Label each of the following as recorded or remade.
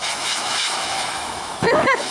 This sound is remade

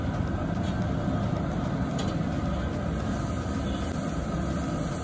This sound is recorded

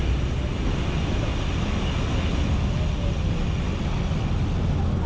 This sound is recorded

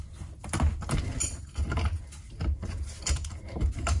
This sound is recorded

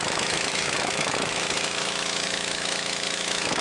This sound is remade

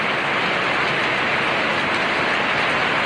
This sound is recorded